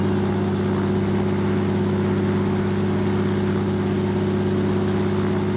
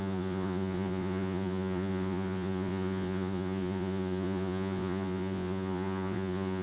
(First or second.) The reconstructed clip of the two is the second